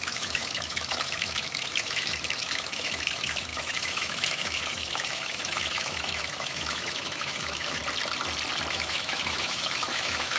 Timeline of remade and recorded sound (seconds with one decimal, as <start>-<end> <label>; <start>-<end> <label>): 0.0-7.8 remade; 7.8-8.7 recorded; 8.7-10.4 remade